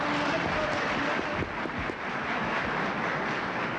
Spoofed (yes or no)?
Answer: no